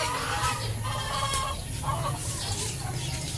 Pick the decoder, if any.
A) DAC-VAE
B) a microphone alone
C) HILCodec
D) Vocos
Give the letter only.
B